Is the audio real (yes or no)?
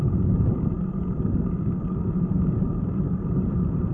yes